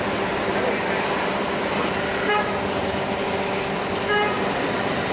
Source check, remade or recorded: recorded